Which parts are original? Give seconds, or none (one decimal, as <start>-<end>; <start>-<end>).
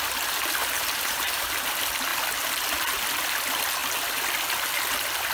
0.0-0.6; 1.4-5.3